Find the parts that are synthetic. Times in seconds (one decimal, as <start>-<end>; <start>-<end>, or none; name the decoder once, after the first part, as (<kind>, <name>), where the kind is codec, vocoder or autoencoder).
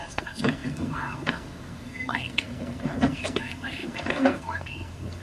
0.0-5.2 (codec, SNAC)